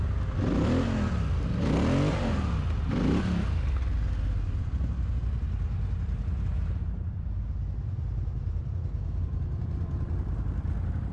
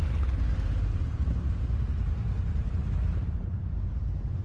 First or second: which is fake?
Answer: second